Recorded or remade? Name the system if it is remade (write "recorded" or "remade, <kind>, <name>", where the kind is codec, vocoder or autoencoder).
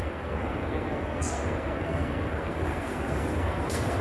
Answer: remade, codec, SNAC